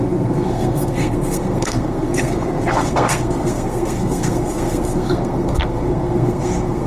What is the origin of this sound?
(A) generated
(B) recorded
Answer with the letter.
A